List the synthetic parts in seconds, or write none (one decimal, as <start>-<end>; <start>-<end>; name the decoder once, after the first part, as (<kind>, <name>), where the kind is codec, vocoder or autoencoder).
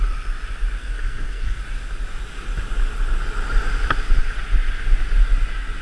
0.8-1.6 (codec, SNAC)